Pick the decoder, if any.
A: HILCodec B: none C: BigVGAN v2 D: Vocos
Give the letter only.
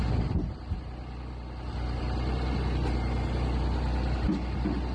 B